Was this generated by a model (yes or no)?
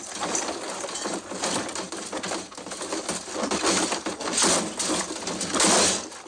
no